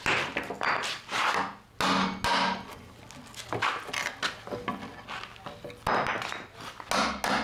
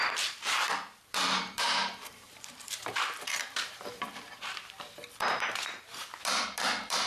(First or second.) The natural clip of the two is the first